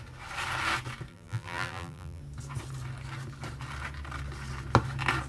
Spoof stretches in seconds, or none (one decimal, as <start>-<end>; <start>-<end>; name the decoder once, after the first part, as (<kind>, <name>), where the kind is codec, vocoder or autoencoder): 1.1-2.2 (vocoder, BigVGAN v2)